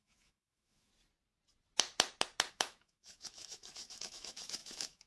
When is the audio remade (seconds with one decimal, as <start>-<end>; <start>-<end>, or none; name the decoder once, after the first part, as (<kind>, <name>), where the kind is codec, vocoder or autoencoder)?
0.0-0.9 (autoencoder, DAC-VAE); 2.5-5.1